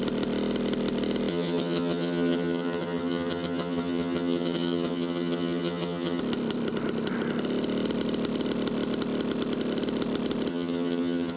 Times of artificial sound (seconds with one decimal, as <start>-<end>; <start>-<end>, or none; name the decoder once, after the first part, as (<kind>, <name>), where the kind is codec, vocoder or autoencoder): 1.3-6.2 (vocoder, HiFi-GAN); 10.5-11.4